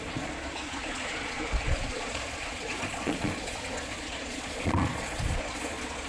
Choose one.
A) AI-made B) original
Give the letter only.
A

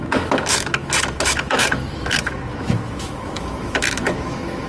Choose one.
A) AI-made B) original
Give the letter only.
A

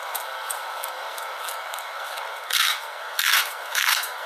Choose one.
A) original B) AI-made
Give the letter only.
B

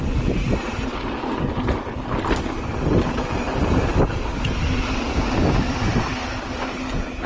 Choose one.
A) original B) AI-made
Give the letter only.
A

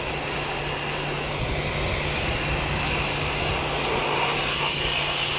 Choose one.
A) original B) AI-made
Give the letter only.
A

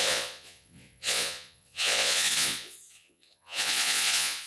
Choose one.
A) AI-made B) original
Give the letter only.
A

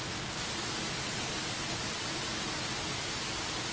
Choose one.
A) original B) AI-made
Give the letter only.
A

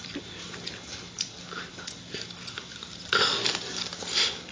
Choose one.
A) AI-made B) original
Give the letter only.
B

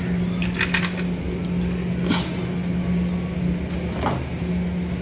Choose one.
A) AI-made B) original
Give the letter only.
B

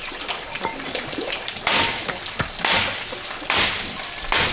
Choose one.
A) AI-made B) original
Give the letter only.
B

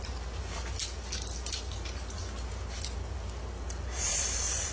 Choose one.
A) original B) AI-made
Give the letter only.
A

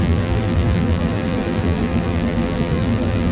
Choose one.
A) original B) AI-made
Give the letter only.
B